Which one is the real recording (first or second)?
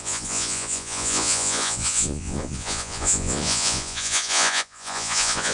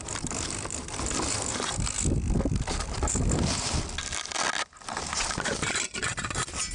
second